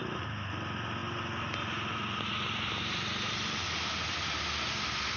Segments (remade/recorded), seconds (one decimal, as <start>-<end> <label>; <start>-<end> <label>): 0.0-5.2 recorded